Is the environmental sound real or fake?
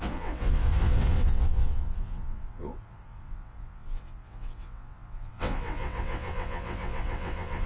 fake